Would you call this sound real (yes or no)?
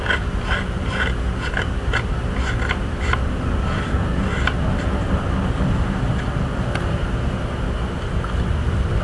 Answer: yes